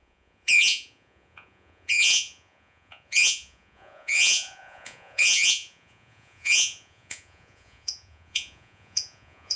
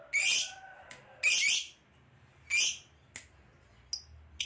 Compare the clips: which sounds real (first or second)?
second